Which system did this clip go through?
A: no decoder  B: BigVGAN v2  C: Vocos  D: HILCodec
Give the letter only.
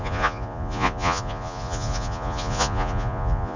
C